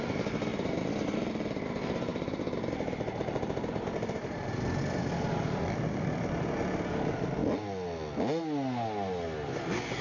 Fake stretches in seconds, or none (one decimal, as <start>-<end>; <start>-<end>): none